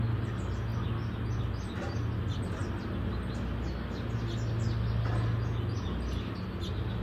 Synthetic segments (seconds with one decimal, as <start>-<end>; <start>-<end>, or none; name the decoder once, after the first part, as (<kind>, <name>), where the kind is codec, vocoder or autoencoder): none